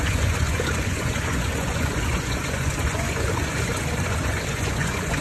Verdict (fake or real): fake